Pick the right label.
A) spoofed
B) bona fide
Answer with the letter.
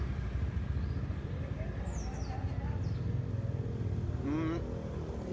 B